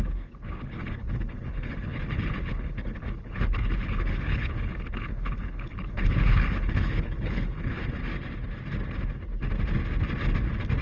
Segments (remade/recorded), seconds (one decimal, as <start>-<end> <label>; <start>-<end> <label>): 0.0-7.8 remade; 7.8-10.8 recorded